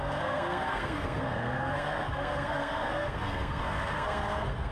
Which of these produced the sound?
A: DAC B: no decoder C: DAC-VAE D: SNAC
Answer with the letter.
D